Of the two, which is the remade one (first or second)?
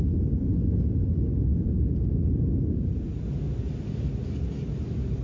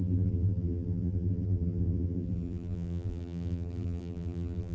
second